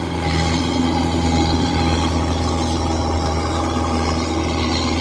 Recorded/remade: recorded